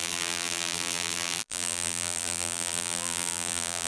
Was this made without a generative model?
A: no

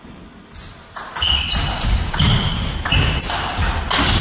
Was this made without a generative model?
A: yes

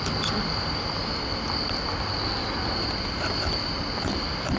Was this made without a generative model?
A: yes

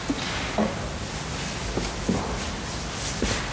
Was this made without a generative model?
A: yes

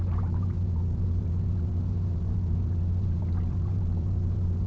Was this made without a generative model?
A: no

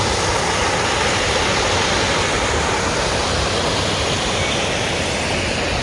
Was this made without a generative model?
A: yes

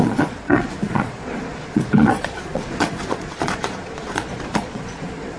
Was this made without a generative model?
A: no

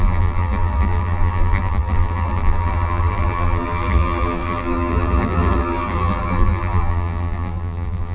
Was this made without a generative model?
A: no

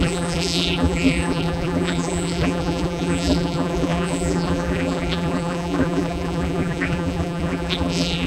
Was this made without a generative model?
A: no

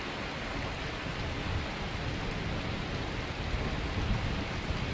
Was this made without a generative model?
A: yes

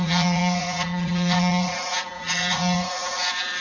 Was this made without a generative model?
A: no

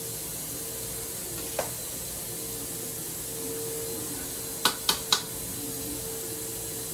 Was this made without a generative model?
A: yes